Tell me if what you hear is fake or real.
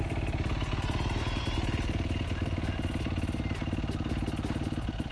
real